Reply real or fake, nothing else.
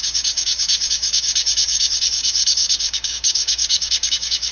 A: fake